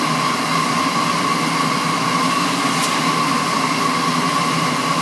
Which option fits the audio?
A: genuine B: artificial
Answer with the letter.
A